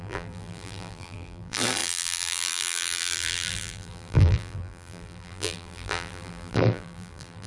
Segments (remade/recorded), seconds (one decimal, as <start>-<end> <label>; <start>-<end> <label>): 0.0-7.5 remade